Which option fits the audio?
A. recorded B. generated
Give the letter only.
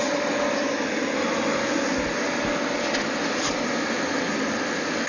A